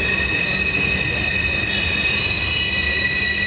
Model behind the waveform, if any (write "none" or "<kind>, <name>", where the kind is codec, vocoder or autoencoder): none